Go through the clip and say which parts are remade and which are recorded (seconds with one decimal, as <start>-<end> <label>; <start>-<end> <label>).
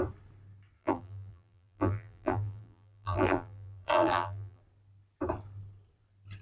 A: 0.0-0.8 recorded; 0.8-4.6 remade; 4.6-6.4 recorded